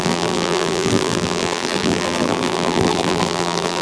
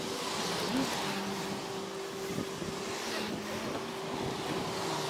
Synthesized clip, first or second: first